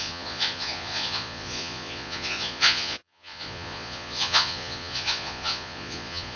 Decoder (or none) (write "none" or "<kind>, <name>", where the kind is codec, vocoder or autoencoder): vocoder, Vocos